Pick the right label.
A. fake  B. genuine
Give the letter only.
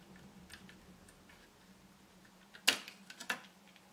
B